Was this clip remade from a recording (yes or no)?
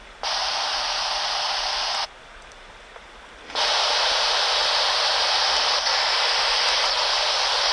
no